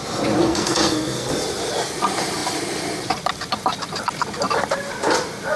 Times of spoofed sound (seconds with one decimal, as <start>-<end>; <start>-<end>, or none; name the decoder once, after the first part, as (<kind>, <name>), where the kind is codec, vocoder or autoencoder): 0.4-1.3 (codec, SNAC)